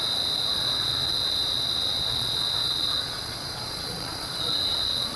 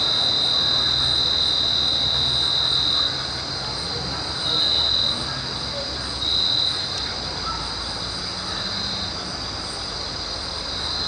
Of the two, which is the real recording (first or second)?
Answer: second